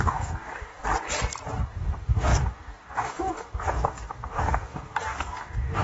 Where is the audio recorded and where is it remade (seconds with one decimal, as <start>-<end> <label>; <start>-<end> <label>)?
0.0-0.8 remade; 0.8-1.6 recorded; 1.6-5.8 remade

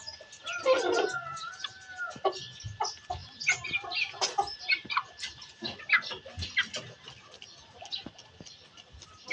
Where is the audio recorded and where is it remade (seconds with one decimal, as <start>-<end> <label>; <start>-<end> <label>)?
0.0-3.2 recorded; 3.2-5.5 remade; 5.5-9.3 recorded

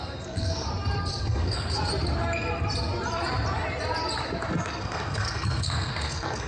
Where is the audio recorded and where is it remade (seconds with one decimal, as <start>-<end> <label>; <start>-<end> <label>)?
0.0-0.7 remade; 0.7-1.2 recorded; 1.2-1.9 remade; 1.9-4.5 recorded; 4.5-6.5 remade

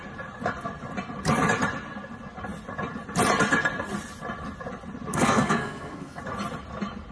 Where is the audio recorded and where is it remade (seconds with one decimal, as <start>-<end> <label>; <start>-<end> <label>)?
0.0-5.1 recorded; 5.1-6.2 remade; 6.2-7.1 recorded

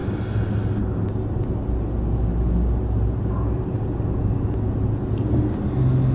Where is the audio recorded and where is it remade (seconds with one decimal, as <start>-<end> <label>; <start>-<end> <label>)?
0.0-6.1 recorded

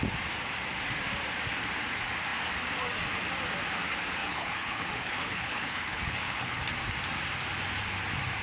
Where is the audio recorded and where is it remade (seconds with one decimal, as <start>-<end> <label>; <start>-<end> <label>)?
0.0-4.2 recorded; 4.2-6.6 remade; 6.6-8.4 recorded

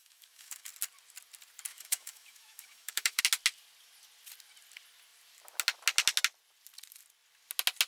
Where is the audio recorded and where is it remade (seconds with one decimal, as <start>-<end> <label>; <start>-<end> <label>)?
0.0-0.7 remade; 0.7-1.7 recorded; 1.7-3.2 remade; 3.2-7.9 recorded

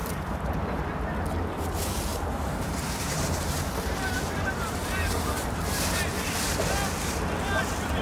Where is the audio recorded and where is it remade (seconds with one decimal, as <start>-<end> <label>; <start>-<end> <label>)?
0.0-0.6 remade; 0.6-2.1 recorded; 2.1-5.6 remade; 5.6-8.0 recorded